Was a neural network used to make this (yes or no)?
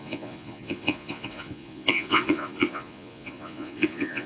yes